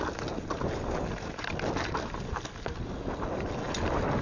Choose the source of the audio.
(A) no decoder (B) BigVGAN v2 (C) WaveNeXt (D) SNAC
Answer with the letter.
A